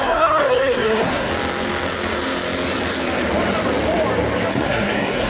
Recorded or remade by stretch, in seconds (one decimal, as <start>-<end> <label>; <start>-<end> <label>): 0.0-1.3 remade; 1.3-4.5 recorded; 4.5-5.3 remade